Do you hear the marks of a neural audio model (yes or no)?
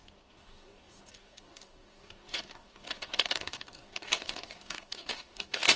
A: yes